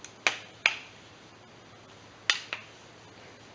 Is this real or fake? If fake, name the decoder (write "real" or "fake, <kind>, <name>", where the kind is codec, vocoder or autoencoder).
real